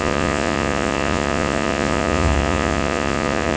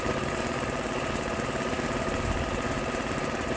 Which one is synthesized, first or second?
first